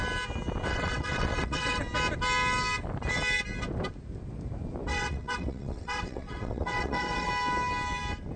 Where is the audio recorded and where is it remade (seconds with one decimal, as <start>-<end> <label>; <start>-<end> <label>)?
0.0-0.7 recorded; 0.7-1.8 remade; 1.8-4.9 recorded; 4.9-7.3 remade; 7.3-8.4 recorded